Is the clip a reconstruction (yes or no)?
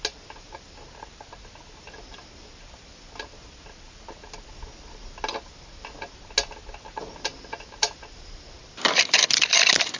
no